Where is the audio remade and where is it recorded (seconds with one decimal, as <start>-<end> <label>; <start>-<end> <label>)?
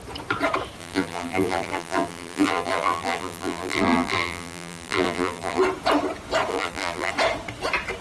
0.0-0.8 recorded; 0.8-5.6 remade; 5.6-6.5 recorded; 6.5-7.1 remade; 7.1-8.0 recorded